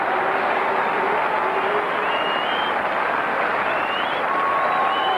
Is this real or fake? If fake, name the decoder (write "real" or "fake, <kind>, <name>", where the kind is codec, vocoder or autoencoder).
real